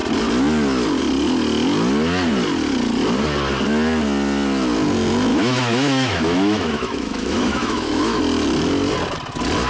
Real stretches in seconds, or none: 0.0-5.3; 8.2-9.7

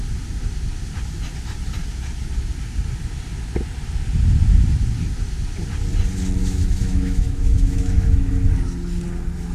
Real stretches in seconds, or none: 0.0-6.4; 8.3-9.5

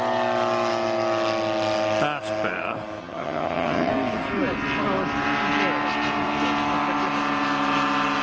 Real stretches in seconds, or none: 0.0-3.0; 3.9-8.2

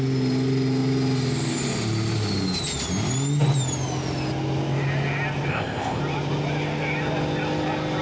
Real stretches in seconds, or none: 0.0-5.5; 6.0-8.0

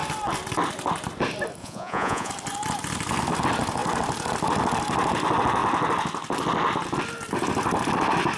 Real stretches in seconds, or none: 0.0-1.6; 2.3-8.4

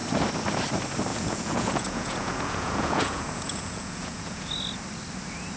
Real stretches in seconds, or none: 0.0-1.1; 4.5-5.6

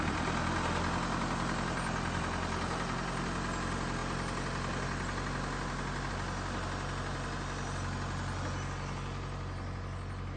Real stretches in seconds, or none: 0.0-10.4